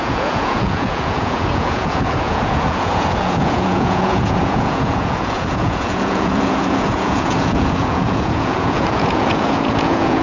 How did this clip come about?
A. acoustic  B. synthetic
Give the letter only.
B